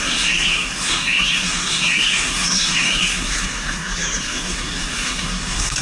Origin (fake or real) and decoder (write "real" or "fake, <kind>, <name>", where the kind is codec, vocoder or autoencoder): fake, codec, SNAC